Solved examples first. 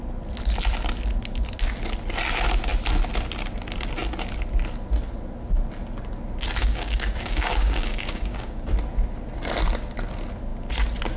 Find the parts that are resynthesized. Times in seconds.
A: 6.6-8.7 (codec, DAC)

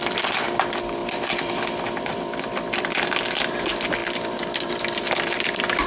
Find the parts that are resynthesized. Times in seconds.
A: 0.0-5.9 (vocoder, BigVGAN v2)

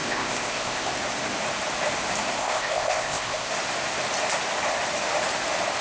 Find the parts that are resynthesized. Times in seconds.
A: 0.0-0.9 (codec, ZipCodec); 2.4-3.5

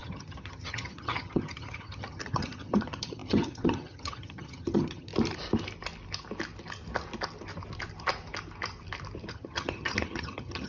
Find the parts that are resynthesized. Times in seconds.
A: 0.0-5.1 (vocoder, HiFi-GAN); 9.3-10.7

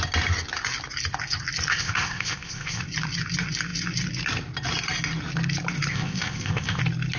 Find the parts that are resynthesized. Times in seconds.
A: 1.7-2.8 (codec, ZipCodec); 5.9-6.8